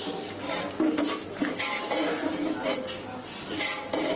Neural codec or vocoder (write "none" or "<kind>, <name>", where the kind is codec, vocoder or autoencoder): none